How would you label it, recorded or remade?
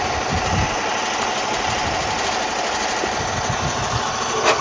recorded